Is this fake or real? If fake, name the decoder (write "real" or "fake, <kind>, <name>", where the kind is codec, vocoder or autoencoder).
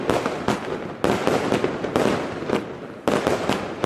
real